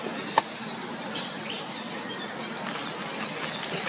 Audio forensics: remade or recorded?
recorded